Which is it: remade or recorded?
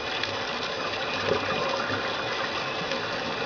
recorded